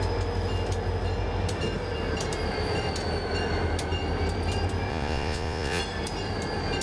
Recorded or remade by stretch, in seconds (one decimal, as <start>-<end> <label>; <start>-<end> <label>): 0.0-4.9 recorded; 4.9-5.8 remade; 5.8-6.8 recorded